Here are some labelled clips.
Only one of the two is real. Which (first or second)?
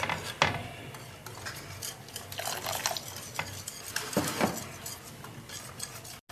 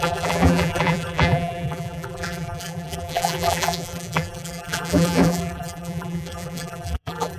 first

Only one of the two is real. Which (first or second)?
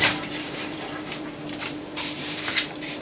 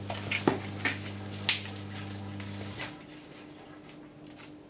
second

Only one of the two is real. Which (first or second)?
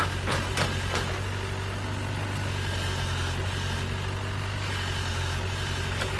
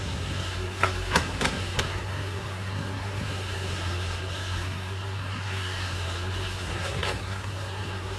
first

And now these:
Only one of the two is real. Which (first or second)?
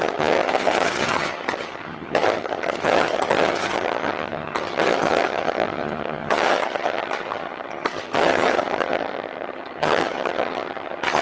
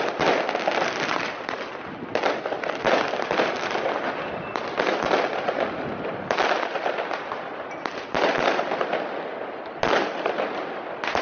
second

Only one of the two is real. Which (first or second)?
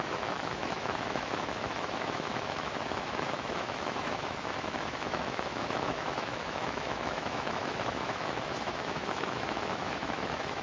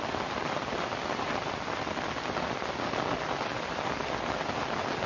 second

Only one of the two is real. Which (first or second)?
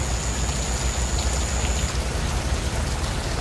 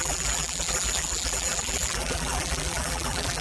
first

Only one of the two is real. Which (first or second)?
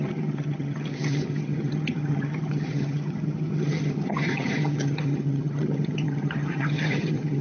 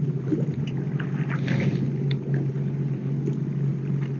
second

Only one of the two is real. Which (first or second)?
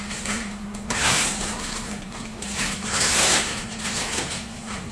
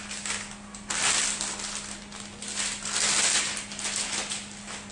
second